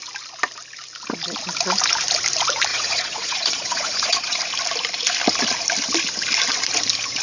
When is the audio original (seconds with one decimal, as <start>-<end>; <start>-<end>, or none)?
0.0-2.7; 4.4-7.2